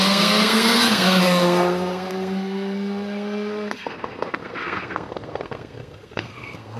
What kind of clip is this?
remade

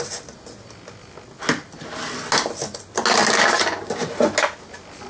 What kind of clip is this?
recorded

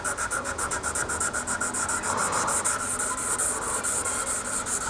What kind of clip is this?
recorded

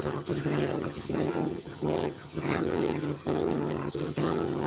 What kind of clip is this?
remade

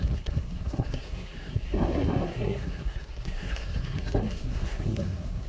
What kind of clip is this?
remade